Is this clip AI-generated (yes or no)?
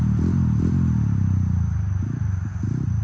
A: no